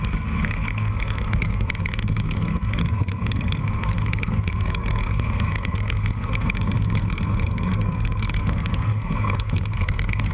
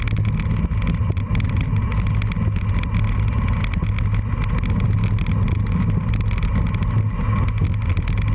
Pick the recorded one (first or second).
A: second